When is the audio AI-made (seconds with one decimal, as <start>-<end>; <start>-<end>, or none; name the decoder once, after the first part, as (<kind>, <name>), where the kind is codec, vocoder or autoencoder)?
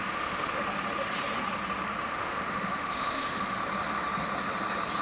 0.0-0.6 (autoencoder, DAC-VAE); 2.0-3.6